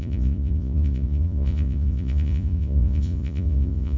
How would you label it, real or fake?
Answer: fake